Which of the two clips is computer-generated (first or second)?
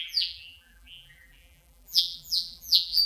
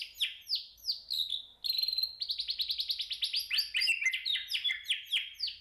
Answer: first